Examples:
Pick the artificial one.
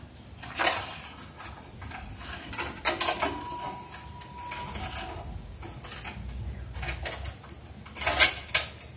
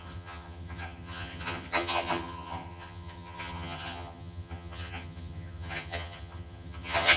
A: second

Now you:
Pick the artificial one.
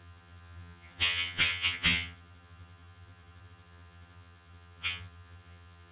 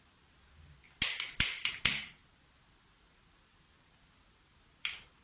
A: first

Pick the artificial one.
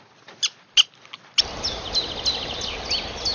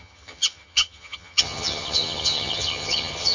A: second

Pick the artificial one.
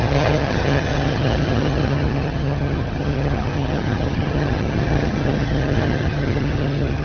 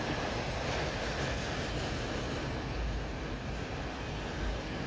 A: first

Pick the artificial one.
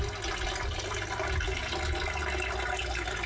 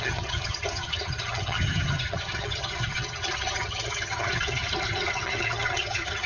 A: second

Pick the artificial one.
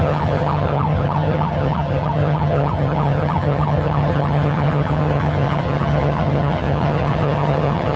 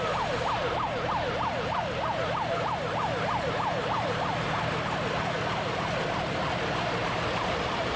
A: first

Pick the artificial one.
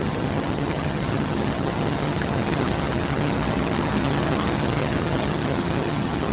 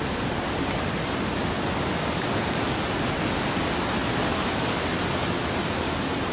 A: first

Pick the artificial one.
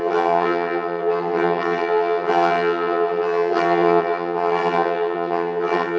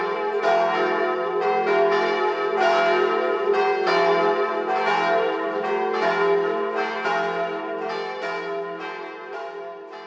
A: first